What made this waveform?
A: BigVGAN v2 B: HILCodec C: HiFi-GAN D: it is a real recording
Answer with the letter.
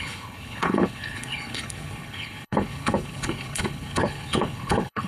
B